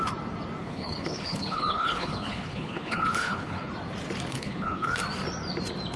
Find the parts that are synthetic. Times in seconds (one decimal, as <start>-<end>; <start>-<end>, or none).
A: 0.6-3.7; 4.3-4.9